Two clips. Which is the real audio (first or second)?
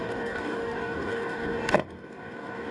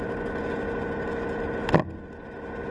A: second